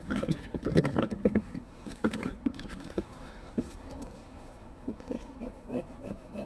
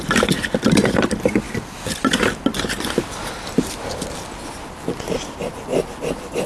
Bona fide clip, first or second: second